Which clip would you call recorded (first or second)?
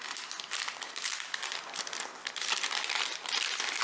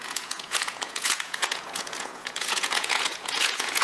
first